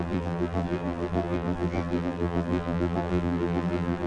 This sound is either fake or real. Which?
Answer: fake